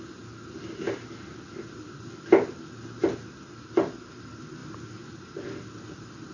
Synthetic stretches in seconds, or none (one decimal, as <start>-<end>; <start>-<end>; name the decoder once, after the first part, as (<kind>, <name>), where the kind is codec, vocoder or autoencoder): none